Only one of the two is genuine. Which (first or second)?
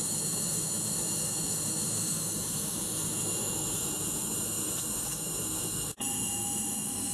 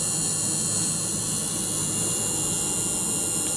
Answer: second